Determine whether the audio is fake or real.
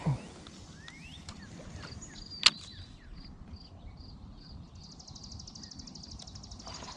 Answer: real